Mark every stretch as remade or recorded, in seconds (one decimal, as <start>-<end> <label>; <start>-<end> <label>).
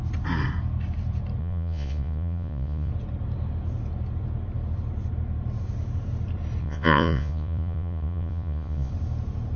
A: 0.0-1.4 recorded; 1.4-2.9 remade; 2.9-6.6 recorded; 6.6-8.9 remade; 8.9-9.6 recorded